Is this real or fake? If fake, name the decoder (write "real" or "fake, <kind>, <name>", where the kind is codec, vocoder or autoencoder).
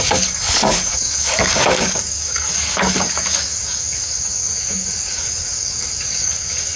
fake, codec, DAC